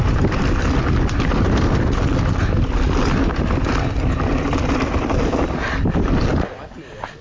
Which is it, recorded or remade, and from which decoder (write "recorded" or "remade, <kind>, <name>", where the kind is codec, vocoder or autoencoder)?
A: recorded